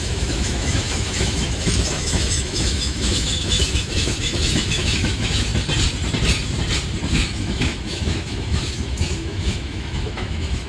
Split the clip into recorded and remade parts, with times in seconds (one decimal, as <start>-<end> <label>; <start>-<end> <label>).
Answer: 0.0-5.5 remade; 5.5-7.1 recorded; 7.1-10.7 remade